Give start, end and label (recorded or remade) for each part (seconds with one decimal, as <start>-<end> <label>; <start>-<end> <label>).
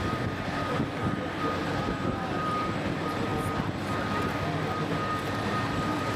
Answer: 0.0-3.3 remade; 3.3-4.9 recorded; 4.9-6.2 remade